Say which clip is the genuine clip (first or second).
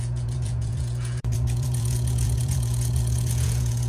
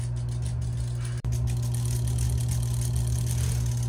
second